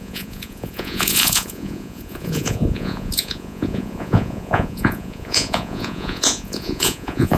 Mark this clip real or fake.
fake